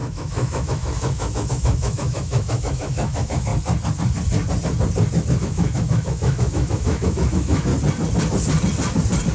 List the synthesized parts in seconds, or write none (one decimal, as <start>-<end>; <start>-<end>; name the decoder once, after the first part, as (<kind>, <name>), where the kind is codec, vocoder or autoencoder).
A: 0.0-3.5 (autoencoder, DAC-VAE); 5.4-7.7